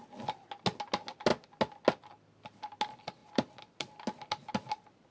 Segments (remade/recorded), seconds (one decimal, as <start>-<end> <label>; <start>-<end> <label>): 0.0-5.1 recorded